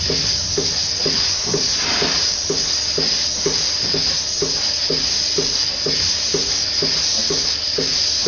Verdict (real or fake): real